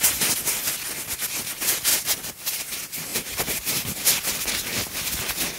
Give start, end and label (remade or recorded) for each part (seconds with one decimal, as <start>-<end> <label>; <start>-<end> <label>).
0.0-1.9 recorded; 1.9-2.7 remade; 2.7-3.1 recorded; 3.1-3.8 remade; 3.8-5.6 recorded